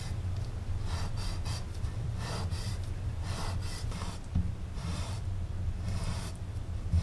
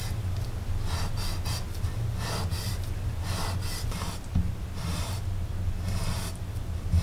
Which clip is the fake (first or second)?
first